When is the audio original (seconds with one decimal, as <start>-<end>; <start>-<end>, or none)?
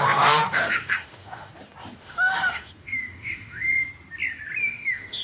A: 1.5-2.0; 3.7-4.6